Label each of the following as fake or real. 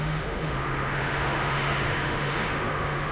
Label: fake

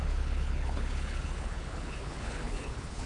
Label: fake